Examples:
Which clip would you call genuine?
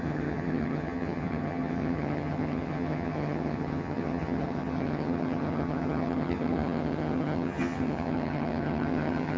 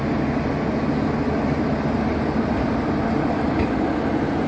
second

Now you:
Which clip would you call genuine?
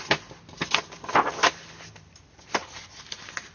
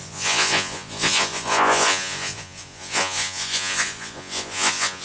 first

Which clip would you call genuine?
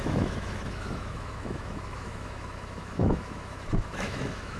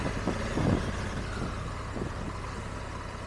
second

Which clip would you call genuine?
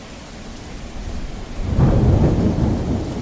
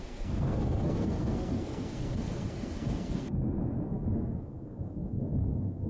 first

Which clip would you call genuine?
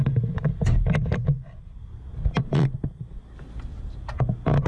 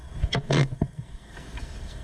first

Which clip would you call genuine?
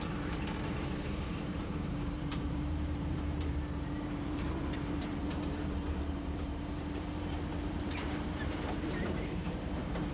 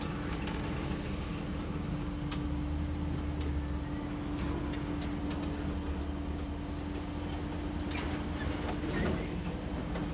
second